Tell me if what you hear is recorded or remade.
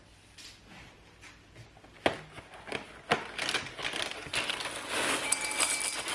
recorded